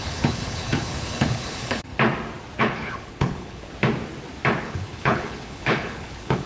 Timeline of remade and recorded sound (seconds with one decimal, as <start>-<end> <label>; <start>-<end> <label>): 0.0-1.9 remade; 1.9-2.6 recorded; 2.6-3.7 remade; 3.7-4.6 recorded; 4.6-6.5 remade